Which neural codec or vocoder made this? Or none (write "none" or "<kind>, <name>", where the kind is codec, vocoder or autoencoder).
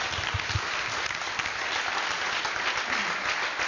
none